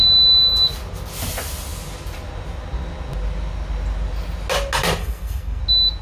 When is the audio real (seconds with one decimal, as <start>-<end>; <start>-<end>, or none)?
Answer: 0.0-5.0; 5.6-6.0